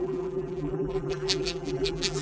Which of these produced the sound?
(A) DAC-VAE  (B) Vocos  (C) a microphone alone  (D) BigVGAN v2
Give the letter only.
D